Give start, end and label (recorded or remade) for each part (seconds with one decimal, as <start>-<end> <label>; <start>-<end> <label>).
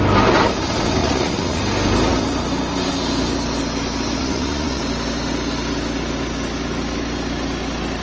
0.0-1.0 recorded; 1.0-1.6 remade; 1.6-4.2 recorded; 4.2-4.8 remade; 4.8-8.0 recorded